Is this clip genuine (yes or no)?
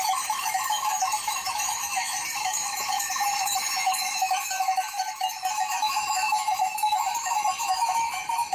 no